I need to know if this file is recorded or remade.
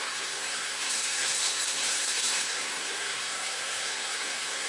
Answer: remade